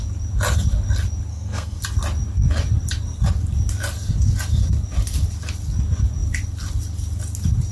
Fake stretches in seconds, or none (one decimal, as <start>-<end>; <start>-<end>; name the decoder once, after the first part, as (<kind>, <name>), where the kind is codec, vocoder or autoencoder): 1.3-1.8 (codec, SNAC)